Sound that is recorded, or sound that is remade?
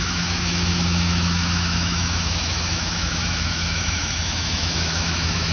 remade